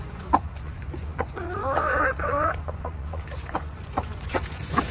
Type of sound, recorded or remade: remade